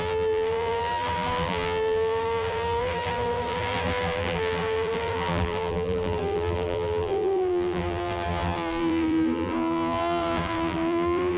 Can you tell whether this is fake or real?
fake